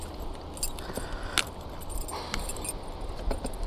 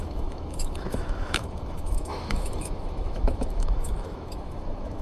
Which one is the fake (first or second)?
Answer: second